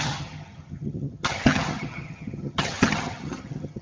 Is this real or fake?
fake